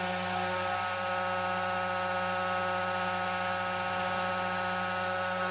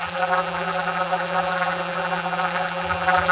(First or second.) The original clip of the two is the first